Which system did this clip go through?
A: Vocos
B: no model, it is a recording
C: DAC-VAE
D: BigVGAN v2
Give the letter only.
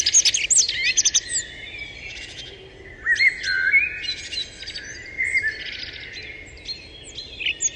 B